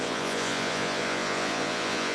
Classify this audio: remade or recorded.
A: remade